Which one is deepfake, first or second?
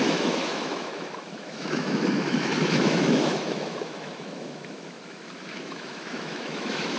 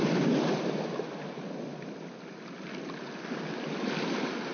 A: first